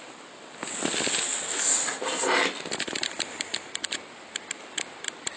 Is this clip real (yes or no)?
yes